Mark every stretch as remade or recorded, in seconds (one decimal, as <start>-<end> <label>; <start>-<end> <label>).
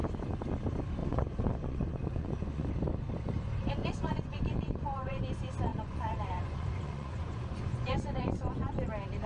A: 0.0-1.0 recorded; 1.0-2.7 remade; 2.7-3.8 recorded; 3.8-5.2 remade; 5.2-5.7 recorded; 5.7-8.7 remade; 8.7-9.3 recorded